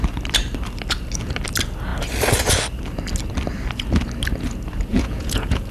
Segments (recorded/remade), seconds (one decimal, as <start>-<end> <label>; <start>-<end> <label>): 0.0-4.9 recorded; 4.9-5.7 remade